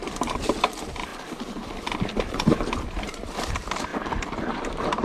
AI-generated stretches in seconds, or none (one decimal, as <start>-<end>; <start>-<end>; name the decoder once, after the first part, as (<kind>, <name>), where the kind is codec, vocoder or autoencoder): 0.0-1.1 (vocoder, BigVGAN v2); 3.1-3.9; 4.5-5.0